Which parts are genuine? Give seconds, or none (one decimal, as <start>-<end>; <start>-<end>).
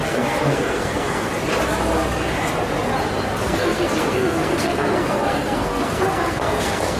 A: 1.3-3.4